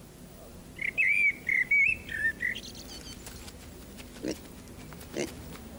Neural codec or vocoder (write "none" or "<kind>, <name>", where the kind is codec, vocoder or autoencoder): none